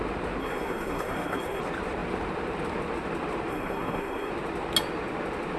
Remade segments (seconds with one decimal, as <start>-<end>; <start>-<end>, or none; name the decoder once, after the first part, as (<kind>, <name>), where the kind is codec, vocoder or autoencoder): 0.4-1.6 (codec, SNAC); 3.5-4.3